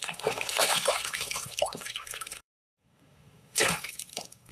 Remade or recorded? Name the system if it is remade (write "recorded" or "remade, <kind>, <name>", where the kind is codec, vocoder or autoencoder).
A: remade, codec, SNAC